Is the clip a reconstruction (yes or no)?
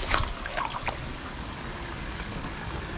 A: yes